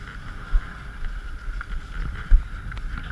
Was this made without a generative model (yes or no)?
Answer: yes